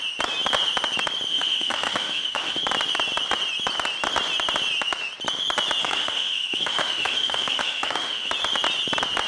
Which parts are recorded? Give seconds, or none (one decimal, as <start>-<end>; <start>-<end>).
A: 0.0-1.3; 2.6-5.8; 8.3-9.3